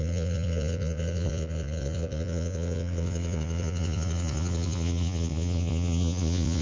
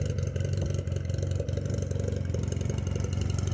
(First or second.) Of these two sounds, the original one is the second